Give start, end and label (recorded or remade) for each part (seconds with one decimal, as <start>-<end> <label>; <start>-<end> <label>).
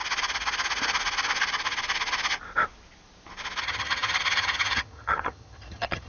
0.0-3.6 recorded; 3.6-6.1 remade